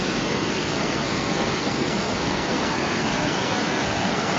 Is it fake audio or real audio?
fake